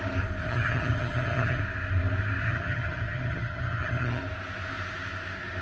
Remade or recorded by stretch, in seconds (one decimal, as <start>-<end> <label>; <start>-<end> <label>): 0.0-0.4 recorded; 0.4-1.6 remade; 1.6-2.4 recorded; 2.4-4.2 remade; 4.2-5.6 recorded